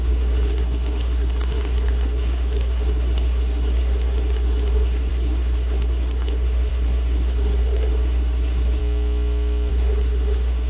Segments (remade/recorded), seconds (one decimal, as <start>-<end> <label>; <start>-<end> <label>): 0.0-8.8 remade; 8.8-9.7 recorded; 9.7-10.7 remade